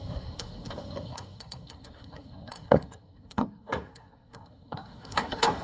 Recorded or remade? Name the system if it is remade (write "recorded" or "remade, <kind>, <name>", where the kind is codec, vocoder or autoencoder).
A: remade, codec, SNAC